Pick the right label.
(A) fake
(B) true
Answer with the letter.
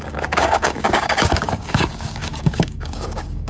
A